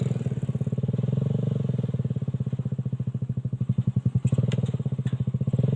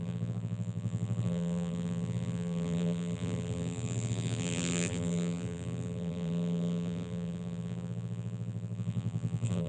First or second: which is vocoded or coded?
second